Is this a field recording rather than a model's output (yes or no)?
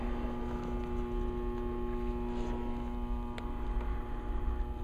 yes